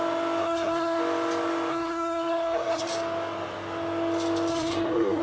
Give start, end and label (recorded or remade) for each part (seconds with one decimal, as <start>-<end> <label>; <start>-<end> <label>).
0.0-0.4 recorded; 0.4-1.0 remade; 1.0-1.7 recorded; 1.7-2.9 remade; 2.9-4.5 recorded; 4.5-5.2 remade